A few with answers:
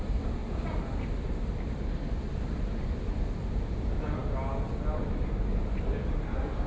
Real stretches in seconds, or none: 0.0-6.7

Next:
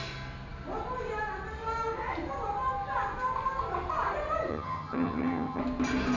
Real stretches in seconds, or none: 0.0-4.5; 5.6-6.2

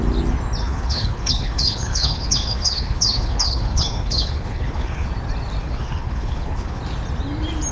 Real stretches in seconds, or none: 0.0-0.6; 5.1-5.6; 6.8-7.7